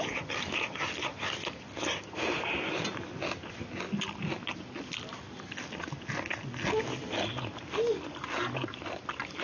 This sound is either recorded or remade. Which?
recorded